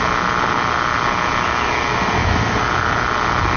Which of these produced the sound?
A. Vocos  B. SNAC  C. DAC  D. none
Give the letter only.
D